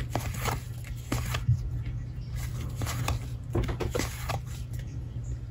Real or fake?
real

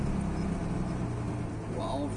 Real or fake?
real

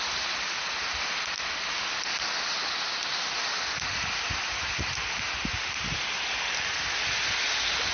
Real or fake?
real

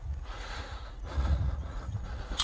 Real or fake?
fake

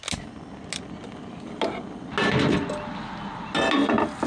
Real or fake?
real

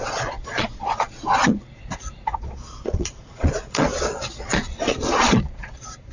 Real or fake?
fake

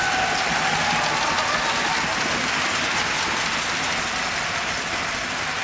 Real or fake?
real